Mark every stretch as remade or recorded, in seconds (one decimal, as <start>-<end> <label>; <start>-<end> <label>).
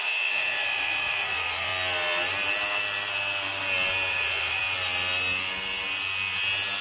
0.0-1.7 remade; 1.7-4.1 recorded; 4.1-4.6 remade; 4.6-6.8 recorded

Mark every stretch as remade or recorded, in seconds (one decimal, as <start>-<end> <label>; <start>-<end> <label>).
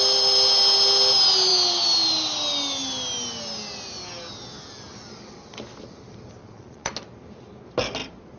0.0-6.4 recorded; 6.4-6.9 remade; 6.9-8.4 recorded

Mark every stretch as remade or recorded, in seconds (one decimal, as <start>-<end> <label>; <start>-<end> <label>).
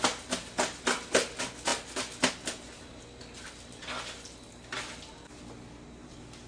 0.0-6.5 recorded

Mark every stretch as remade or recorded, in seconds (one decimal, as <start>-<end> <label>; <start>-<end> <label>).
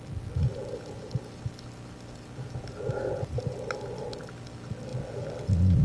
0.0-5.8 recorded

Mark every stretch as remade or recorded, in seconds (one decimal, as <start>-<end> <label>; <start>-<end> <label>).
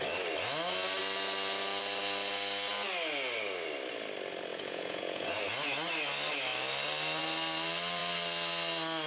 0.0-4.5 recorded; 4.5-5.3 remade; 5.3-9.1 recorded